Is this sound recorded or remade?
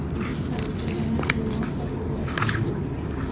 recorded